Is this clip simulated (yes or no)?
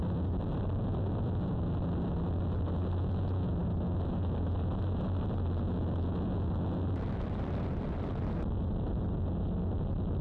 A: no